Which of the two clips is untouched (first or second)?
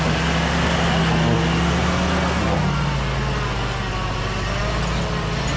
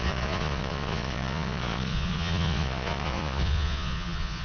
first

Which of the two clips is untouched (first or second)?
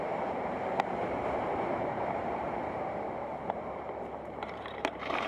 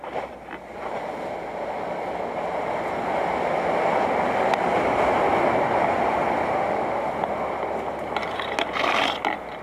second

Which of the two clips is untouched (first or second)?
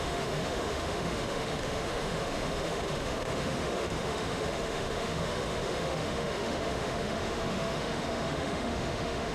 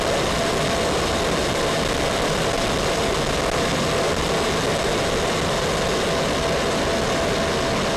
second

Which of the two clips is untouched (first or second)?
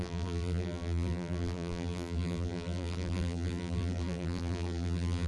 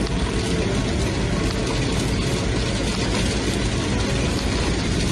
second